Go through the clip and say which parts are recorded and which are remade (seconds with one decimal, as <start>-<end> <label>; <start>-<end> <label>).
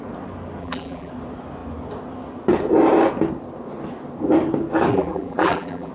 0.0-0.6 recorded; 0.6-1.1 remade; 1.1-4.9 recorded; 4.9-5.9 remade